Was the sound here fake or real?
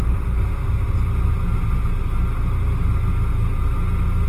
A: real